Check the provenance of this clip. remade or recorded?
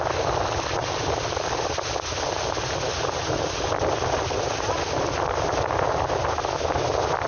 recorded